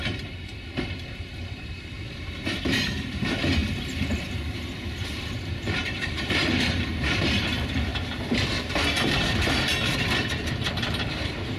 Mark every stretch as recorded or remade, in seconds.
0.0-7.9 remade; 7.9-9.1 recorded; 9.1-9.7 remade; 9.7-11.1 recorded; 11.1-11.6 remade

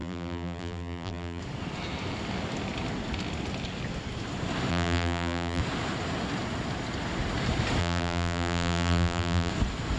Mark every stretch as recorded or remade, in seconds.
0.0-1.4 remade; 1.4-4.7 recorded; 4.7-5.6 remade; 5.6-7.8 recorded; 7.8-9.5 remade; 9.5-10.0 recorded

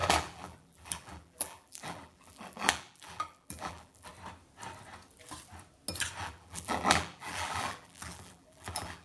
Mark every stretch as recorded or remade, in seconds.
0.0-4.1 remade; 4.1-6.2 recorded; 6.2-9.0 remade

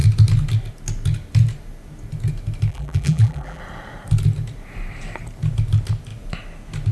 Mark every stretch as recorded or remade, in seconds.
0.0-2.7 recorded; 2.7-3.6 remade; 3.6-6.9 recorded

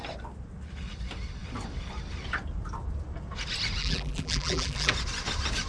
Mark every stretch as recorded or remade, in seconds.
0.0-3.8 recorded; 3.8-4.9 remade; 4.9-5.7 recorded